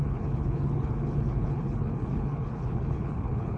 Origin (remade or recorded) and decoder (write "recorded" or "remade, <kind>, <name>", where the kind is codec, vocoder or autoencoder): remade, codec, HILCodec